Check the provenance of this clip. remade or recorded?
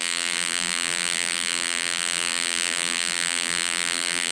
remade